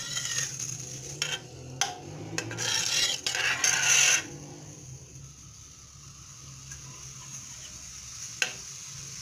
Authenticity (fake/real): real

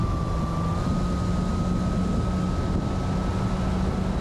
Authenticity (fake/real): real